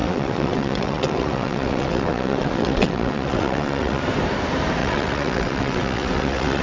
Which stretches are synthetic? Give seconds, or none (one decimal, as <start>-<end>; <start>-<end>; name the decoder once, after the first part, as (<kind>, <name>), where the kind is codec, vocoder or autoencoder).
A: 0.0-4.0 (vocoder, WaveNeXt); 4.8-6.6